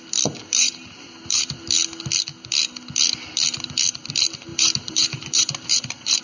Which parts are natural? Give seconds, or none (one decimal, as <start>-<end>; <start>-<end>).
0.0-0.4; 1.7-4.5